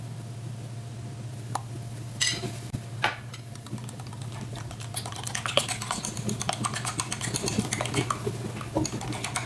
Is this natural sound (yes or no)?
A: no